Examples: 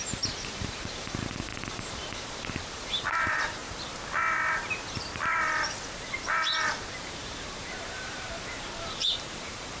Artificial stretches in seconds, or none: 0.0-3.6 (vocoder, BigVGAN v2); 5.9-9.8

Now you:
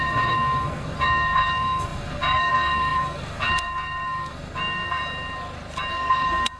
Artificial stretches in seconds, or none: 0.0-5.0 (codec, SNAC); 5.9-6.6

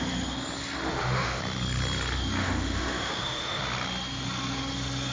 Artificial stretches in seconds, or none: 0.9-1.4 (autoencoder, DAC-VAE); 2.4-3.6

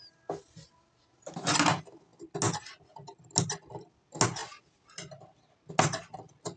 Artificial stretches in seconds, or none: none

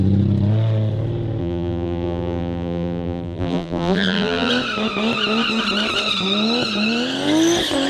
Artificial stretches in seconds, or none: 1.4-4.5 (vocoder, BigVGAN v2)

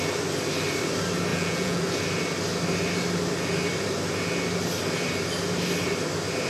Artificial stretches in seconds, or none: 1.3-1.8 (vocoder, Vocos)